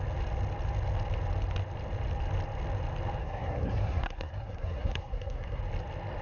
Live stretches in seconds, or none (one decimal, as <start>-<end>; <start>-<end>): 0.0-3.2; 5.6-6.2